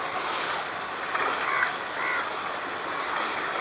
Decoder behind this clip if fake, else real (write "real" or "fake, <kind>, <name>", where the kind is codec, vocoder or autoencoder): real